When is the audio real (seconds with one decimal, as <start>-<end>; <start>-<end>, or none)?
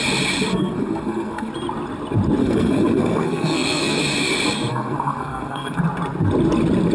0.0-0.5; 1.5-2.4; 4.0-4.7; 5.8-6.9